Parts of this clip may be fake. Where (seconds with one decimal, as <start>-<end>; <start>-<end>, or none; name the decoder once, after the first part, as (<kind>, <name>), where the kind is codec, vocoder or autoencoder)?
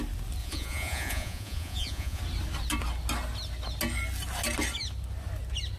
0.4-2.2 (vocoder, Vocos)